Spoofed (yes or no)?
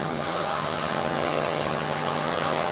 yes